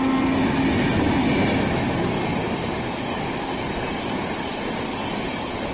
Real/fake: real